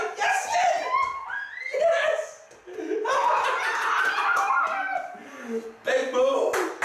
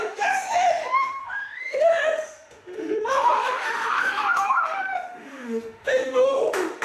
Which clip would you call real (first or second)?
first